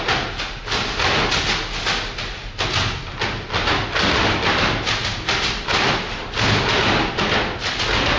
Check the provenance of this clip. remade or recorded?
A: recorded